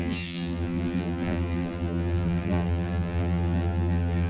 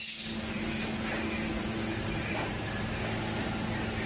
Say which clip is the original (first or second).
second